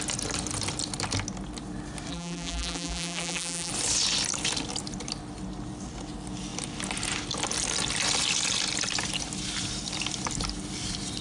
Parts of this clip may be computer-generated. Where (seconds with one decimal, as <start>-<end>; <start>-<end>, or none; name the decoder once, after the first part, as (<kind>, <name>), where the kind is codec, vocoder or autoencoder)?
2.1-3.7 (vocoder, BigVGAN v2)